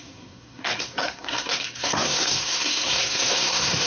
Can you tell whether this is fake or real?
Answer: fake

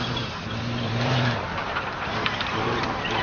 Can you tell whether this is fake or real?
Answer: fake